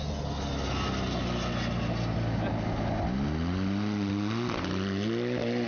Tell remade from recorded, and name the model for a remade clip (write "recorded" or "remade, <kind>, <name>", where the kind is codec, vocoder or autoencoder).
recorded